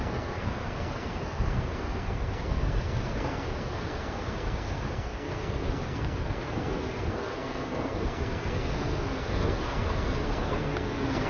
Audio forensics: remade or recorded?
remade